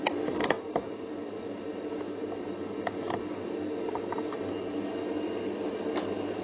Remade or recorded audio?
recorded